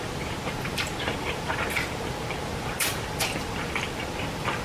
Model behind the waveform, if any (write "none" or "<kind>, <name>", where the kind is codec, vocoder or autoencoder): vocoder, BigVGAN v2